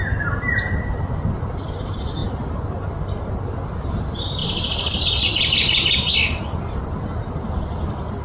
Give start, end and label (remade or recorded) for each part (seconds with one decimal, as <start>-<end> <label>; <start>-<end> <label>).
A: 0.0-4.4 recorded; 4.4-6.6 remade; 6.6-8.2 recorded

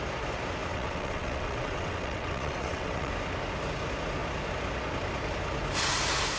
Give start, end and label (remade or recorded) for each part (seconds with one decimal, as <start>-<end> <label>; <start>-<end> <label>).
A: 0.0-0.7 recorded; 0.7-3.1 remade; 3.1-6.4 recorded

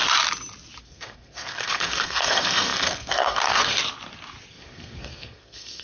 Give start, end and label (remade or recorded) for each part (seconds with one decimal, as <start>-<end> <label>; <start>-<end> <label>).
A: 0.0-0.8 recorded; 0.8-3.8 remade; 3.8-4.5 recorded; 4.5-5.8 remade

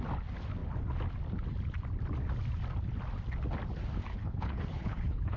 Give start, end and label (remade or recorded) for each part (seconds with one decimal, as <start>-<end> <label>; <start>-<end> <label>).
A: 0.0-4.1 recorded; 4.1-5.4 remade

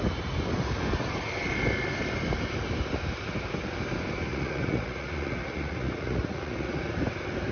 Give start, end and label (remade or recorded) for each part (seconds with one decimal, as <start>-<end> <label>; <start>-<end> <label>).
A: 0.0-4.3 recorded; 4.3-6.8 remade; 6.8-7.5 recorded

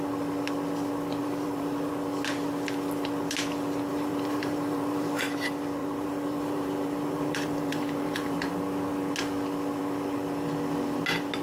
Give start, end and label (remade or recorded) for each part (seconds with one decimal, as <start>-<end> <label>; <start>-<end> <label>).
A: 0.0-1.2 recorded; 1.2-1.9 remade; 1.9-3.9 recorded; 3.9-5.2 remade; 5.2-5.8 recorded; 5.8-8.5 remade; 8.5-11.4 recorded